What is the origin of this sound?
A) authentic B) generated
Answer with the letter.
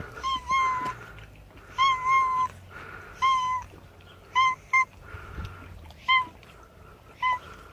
A